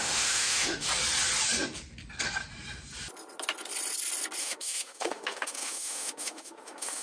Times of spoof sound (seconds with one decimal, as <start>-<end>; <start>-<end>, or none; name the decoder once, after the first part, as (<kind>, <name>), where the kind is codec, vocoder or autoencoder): 0.0-0.9 (autoencoder, DAC-VAE); 4.4-7.0